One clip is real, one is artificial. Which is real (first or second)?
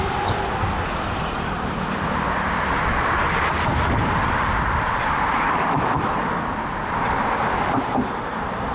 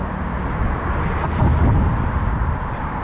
second